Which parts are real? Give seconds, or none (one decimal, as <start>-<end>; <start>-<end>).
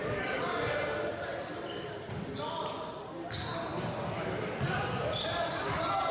0.6-6.1